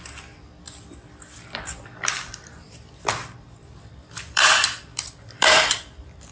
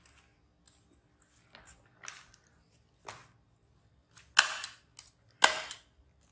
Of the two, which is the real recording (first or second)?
second